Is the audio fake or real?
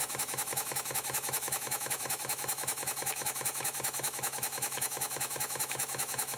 fake